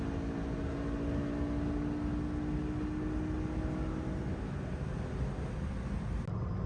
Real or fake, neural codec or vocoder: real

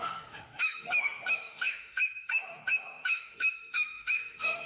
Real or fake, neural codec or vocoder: fake, autoencoder, DAC-VAE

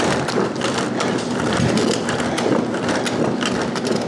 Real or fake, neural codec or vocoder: real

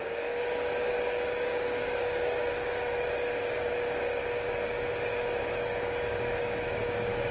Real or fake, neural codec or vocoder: fake, codec, DAC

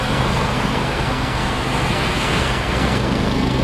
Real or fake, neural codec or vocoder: fake, codec, SNAC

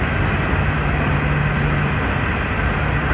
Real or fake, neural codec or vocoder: real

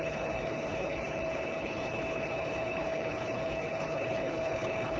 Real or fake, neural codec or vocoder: fake, codec, HILCodec